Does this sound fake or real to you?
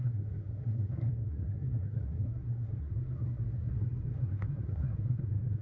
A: fake